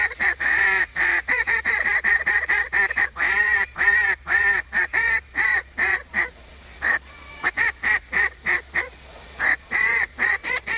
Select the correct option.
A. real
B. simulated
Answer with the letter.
B